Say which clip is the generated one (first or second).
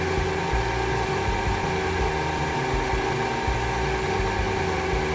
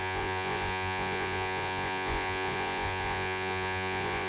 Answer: second